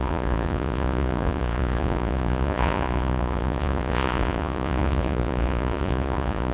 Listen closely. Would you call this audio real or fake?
fake